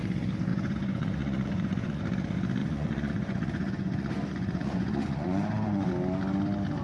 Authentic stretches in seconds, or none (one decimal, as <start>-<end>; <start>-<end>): 0.0-0.5; 2.0-2.6; 5.9-6.8

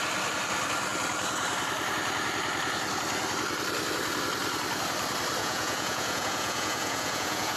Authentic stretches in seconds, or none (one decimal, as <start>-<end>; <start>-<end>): 0.0-5.4

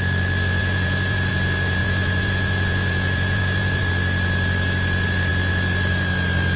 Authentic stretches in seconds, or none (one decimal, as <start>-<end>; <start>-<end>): 0.0-0.6; 1.3-1.8; 3.8-6.6

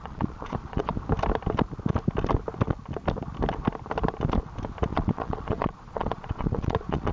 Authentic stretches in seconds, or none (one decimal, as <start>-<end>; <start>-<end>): 0.9-4.9